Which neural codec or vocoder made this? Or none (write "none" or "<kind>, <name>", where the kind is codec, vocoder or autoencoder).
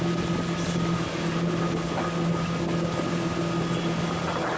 none